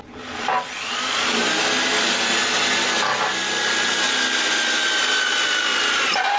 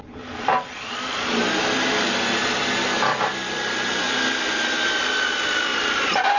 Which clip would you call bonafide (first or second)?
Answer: first